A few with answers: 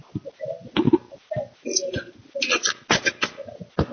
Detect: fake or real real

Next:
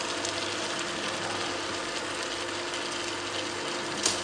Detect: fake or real real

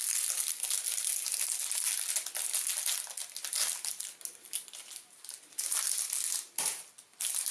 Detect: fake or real real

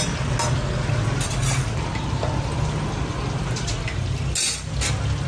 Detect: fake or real real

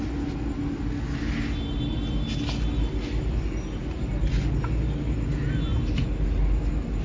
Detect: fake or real real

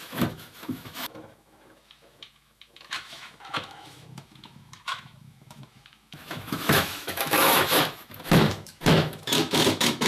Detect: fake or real fake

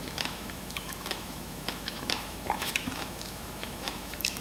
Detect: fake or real fake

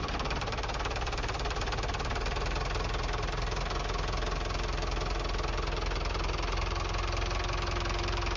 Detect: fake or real real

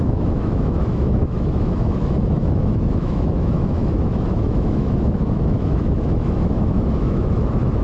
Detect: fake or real fake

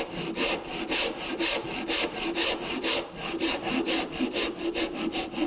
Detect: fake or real real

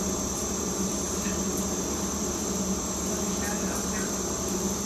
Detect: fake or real real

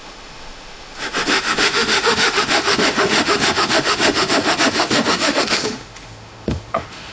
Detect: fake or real fake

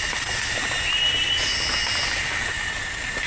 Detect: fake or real real